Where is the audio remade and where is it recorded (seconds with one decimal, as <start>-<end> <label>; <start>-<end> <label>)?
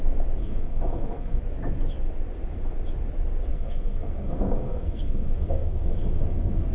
0.0-0.4 recorded; 0.4-1.4 remade; 1.4-3.5 recorded; 3.5-6.7 remade